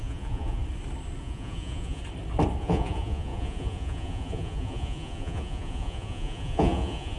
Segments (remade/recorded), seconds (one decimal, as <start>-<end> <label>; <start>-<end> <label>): 0.0-0.6 remade; 0.6-1.2 recorded; 1.2-2.0 remade; 2.0-2.6 recorded; 2.6-7.2 remade